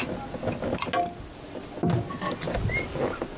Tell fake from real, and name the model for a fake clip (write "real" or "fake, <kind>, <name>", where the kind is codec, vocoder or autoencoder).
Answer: real